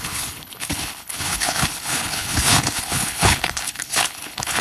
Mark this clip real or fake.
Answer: fake